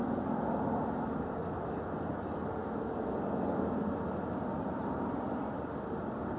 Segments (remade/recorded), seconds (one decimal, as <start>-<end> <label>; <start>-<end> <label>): 0.0-6.4 recorded